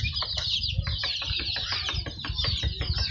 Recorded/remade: remade